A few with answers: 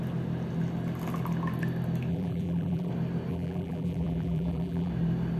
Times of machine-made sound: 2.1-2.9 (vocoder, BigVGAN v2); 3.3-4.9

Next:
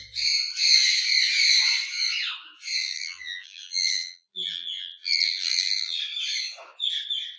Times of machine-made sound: 2.8-6.0 (vocoder, BigVGAN v2)